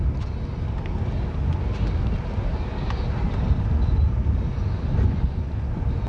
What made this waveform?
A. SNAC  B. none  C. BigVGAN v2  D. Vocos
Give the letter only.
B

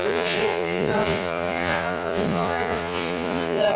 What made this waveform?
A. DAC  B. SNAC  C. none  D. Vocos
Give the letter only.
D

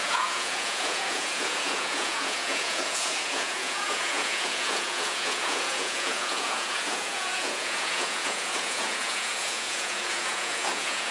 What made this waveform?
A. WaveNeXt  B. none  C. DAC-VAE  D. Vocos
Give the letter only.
D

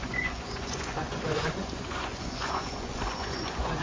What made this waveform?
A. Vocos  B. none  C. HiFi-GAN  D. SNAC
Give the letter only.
A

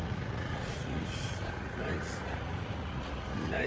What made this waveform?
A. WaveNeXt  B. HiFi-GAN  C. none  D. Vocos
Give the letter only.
D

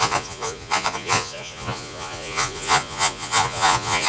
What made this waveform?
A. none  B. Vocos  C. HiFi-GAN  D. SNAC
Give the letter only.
B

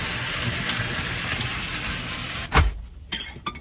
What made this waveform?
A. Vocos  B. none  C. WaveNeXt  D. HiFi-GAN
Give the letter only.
B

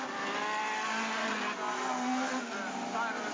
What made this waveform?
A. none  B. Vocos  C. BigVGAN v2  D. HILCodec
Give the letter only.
A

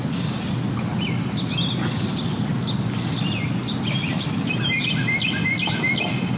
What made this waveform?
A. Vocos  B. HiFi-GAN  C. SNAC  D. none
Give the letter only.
D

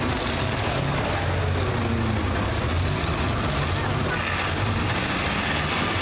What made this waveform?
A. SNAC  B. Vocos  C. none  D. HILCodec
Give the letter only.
C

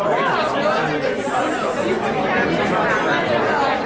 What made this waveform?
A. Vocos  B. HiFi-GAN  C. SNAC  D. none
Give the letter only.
D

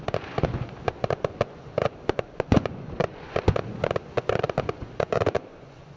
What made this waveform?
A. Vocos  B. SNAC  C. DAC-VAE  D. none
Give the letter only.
A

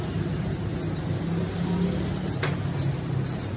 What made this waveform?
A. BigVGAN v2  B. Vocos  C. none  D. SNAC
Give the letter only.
C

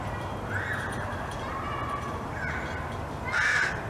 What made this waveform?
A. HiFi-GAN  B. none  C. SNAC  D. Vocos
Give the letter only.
B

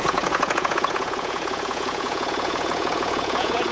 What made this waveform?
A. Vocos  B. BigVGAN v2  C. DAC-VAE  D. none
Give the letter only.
A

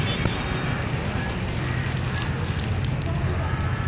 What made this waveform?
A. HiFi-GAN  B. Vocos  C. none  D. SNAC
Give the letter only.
C